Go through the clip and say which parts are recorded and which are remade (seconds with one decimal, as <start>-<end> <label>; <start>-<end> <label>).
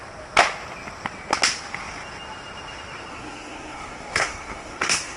0.0-3.1 recorded; 3.1-5.2 remade